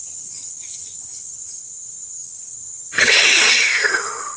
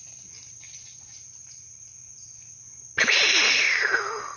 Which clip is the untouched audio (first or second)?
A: second